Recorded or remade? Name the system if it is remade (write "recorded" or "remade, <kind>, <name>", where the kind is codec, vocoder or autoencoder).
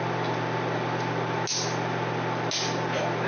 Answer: recorded